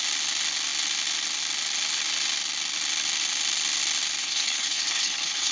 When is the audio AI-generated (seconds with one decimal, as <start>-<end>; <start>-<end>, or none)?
4.2-5.5